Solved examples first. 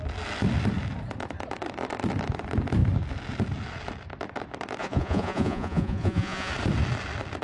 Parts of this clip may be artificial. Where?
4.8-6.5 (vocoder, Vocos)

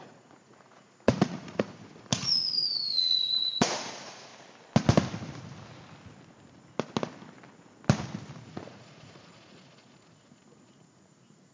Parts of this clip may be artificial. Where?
0.0-4.3 (vocoder, Vocos); 8.5-11.5

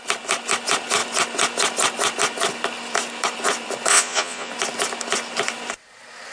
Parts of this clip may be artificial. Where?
3.9-4.5 (vocoder, Vocos)

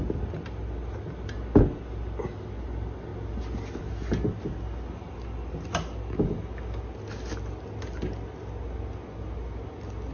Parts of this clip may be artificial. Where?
none

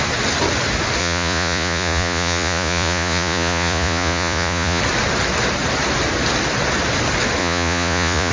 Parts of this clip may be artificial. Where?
1.0-4.8 (vocoder, Vocos); 7.4-8.3